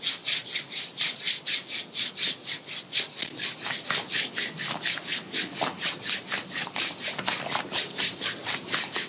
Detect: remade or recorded recorded